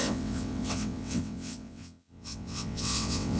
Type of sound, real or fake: fake